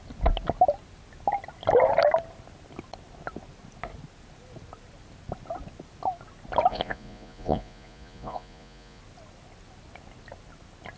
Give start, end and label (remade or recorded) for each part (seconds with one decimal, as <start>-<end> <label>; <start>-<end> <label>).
0.0-6.7 recorded; 6.7-9.0 remade; 9.0-11.0 recorded